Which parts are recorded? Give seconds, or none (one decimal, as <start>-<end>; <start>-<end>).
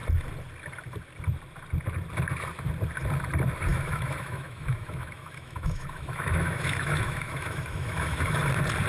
0.0-3.7; 8.4-8.9